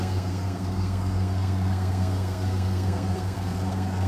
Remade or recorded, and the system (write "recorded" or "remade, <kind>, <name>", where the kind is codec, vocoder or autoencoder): remade, codec, SNAC